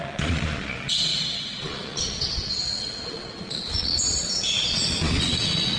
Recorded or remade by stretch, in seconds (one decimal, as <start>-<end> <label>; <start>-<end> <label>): 0.0-5.8 remade